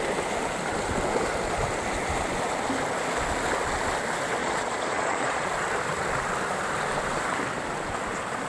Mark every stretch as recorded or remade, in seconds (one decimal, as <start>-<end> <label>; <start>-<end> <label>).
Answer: 0.0-4.4 recorded; 4.4-5.5 remade; 5.5-8.5 recorded